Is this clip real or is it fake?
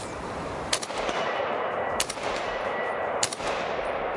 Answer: fake